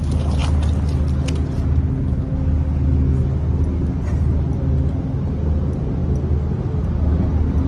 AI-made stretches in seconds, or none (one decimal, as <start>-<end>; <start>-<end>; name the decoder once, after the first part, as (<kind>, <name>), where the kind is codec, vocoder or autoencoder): none